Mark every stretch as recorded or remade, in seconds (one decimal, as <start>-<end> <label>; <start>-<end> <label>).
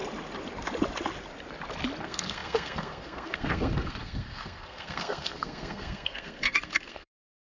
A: 0.0-2.0 recorded; 2.0-7.5 remade